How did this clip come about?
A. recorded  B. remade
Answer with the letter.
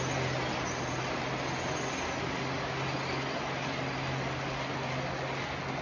A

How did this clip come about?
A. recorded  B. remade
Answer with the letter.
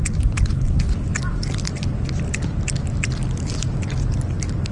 A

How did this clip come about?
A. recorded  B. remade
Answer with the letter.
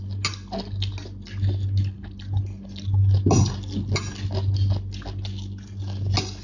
A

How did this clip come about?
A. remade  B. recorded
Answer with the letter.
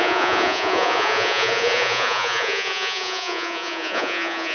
A